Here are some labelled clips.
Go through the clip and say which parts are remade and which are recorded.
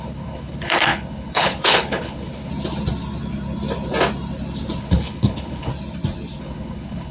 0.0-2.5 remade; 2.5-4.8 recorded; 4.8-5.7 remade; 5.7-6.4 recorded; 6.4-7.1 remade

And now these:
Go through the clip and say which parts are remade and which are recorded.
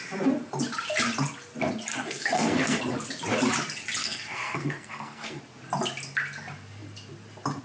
0.0-1.9 recorded; 1.9-2.8 remade; 2.8-4.0 recorded; 4.0-5.4 remade; 5.4-7.6 recorded